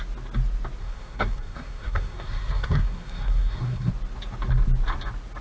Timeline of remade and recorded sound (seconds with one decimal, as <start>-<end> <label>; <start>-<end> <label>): 0.0-0.8 recorded; 0.8-3.9 remade; 3.9-5.4 recorded